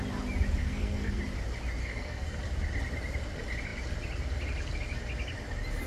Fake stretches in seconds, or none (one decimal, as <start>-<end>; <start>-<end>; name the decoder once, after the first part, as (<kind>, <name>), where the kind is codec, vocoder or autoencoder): 0.6-1.2 (codec, SNAC); 1.8-2.4